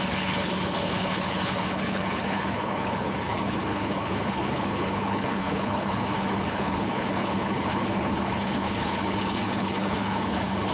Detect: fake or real fake